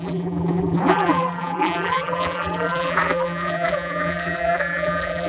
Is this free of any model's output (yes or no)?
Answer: no